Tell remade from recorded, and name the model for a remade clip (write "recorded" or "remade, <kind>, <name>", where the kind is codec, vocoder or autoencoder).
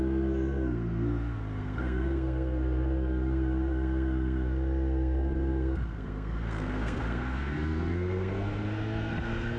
remade, codec, SNAC